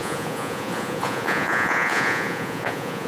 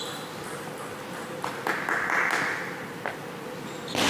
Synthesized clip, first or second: first